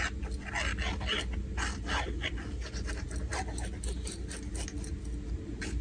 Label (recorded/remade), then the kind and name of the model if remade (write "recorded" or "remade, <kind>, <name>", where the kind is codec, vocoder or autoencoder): recorded